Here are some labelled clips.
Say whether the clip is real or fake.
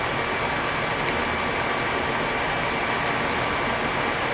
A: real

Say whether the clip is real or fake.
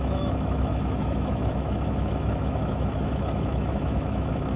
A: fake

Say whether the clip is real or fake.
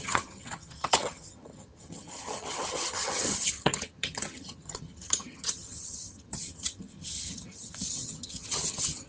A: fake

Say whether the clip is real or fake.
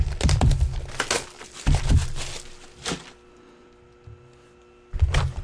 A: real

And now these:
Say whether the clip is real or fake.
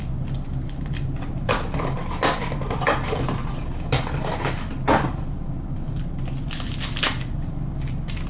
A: fake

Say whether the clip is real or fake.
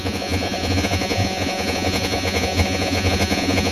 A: fake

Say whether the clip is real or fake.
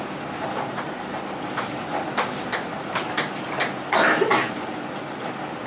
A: real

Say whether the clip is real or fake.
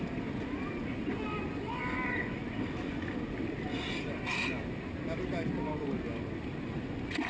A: real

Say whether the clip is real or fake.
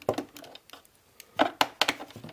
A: real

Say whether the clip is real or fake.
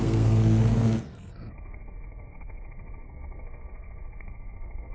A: fake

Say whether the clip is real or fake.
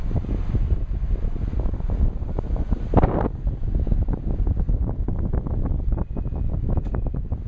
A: real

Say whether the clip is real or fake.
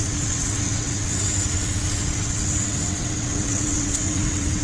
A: fake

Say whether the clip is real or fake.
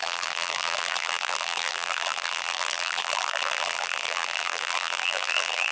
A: fake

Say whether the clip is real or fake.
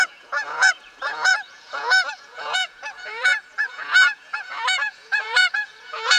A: fake